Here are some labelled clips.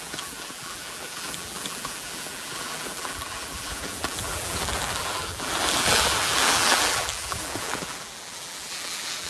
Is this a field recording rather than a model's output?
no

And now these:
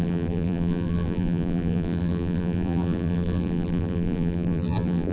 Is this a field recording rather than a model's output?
no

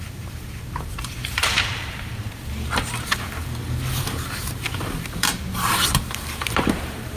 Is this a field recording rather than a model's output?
no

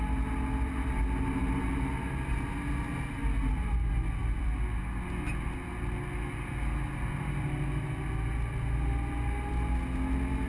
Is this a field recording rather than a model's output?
yes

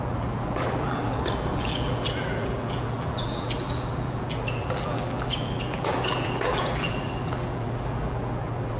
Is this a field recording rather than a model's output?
no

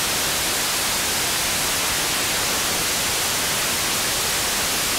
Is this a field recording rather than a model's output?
yes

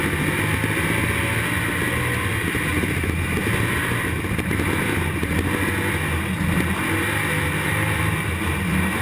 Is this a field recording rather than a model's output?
yes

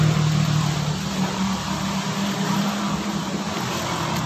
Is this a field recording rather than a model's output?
yes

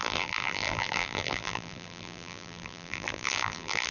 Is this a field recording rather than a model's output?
no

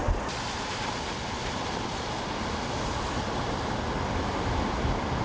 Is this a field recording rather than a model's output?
yes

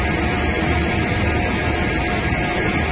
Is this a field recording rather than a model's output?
yes